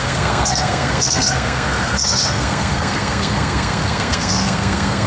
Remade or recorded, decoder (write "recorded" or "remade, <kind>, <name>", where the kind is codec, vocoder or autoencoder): remade, codec, SNAC